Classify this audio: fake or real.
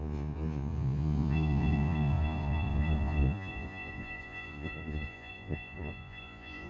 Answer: fake